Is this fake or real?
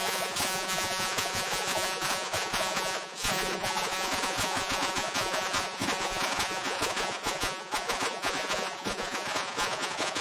fake